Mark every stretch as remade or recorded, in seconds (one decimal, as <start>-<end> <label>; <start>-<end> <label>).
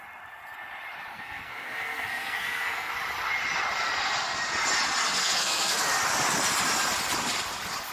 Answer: 0.0-1.1 recorded; 1.1-2.9 remade; 2.9-5.2 recorded; 5.2-5.8 remade; 5.8-7.9 recorded